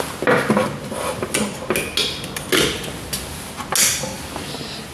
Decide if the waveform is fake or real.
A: real